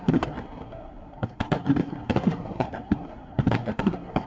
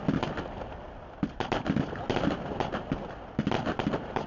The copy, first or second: first